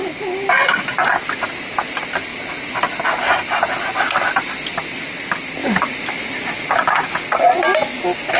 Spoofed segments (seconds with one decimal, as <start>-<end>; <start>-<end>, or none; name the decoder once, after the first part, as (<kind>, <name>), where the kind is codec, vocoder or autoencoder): none